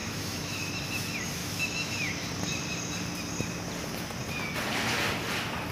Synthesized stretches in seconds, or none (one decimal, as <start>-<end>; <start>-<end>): 0.0-0.7; 1.4-2.1